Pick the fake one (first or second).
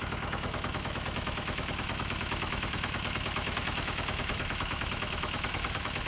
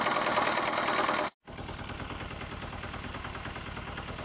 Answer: first